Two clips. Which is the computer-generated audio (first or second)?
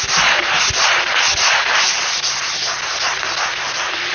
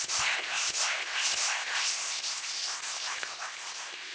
second